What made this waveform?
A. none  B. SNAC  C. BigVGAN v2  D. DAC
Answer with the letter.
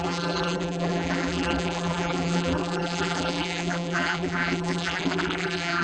C